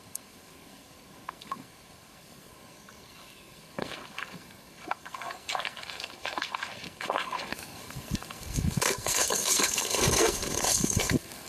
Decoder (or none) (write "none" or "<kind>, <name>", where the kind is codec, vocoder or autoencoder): codec, SNAC